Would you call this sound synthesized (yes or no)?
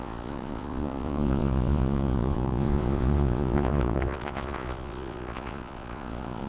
yes